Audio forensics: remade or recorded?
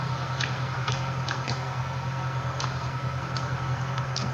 remade